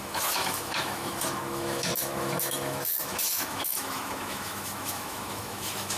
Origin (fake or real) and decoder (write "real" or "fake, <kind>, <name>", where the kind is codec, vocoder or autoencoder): fake, autoencoder, DAC-VAE